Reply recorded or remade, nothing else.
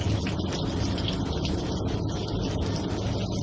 recorded